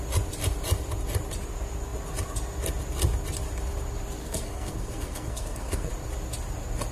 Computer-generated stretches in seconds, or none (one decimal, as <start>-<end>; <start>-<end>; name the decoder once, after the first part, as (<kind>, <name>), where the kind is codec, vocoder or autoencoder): 4.2-5.9 (codec, SNAC)